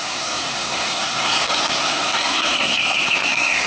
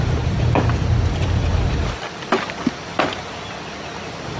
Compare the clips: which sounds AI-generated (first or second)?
first